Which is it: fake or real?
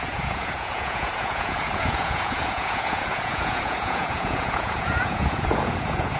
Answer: fake